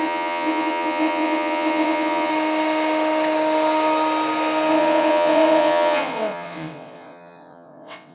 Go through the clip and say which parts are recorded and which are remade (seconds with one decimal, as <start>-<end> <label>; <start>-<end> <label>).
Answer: 0.0-2.3 remade; 2.3-4.7 recorded; 4.7-8.1 remade